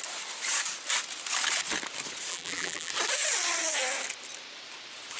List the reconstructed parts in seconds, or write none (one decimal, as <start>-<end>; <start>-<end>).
2.3-2.9